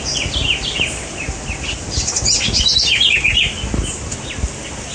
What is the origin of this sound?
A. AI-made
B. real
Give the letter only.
B